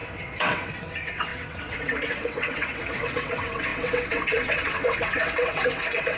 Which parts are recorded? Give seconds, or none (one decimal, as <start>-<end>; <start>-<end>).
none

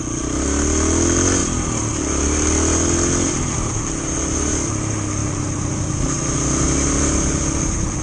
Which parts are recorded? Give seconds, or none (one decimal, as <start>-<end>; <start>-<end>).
0.0-8.0

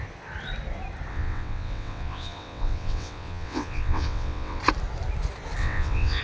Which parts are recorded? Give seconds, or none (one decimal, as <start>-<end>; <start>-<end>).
0.0-1.1; 4.6-5.6

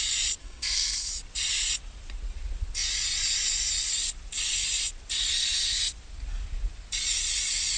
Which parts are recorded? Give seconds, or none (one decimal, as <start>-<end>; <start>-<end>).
0.0-0.4; 1.1-7.8